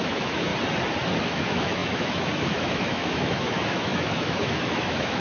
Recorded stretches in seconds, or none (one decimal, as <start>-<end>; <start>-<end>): 0.5-1.2